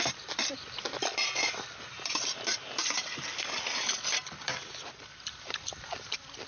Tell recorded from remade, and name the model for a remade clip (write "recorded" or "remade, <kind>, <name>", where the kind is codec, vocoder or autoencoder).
remade, vocoder, BigVGAN v2